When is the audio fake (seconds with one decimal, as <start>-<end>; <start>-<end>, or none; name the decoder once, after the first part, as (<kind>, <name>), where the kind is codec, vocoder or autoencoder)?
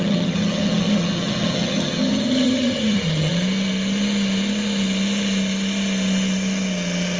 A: 0.0-3.3 (vocoder, HiFi-GAN)